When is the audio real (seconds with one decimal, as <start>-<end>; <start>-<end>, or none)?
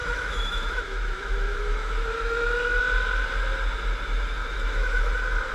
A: 2.8-4.4; 5.1-5.5